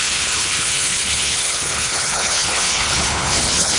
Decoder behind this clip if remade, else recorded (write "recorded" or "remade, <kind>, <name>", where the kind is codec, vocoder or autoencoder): remade, codec, HILCodec